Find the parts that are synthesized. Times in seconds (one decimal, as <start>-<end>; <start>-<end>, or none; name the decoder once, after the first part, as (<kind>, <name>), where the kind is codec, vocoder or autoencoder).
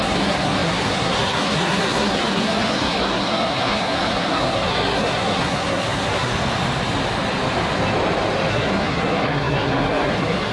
0.0-6.3 (codec, SNAC); 8.5-10.5